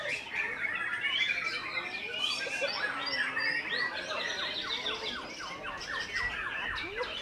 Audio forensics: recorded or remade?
recorded